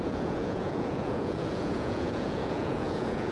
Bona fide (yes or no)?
no